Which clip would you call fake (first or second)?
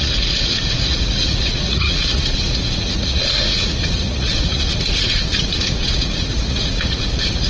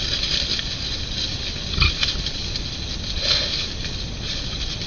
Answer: first